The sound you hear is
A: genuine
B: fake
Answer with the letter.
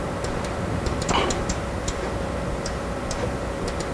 B